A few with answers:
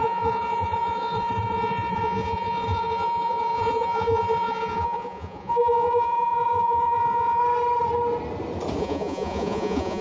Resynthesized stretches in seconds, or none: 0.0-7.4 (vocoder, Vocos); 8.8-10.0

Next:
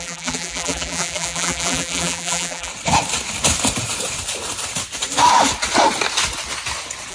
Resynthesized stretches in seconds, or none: 0.0-2.7 (vocoder, BigVGAN v2)

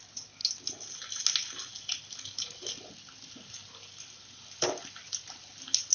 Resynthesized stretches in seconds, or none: none

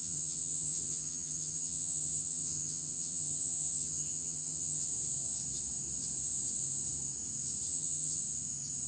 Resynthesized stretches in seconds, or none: 0.0-4.9 (vocoder, HiFi-GAN); 7.7-8.2